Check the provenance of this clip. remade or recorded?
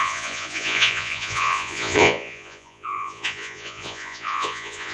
remade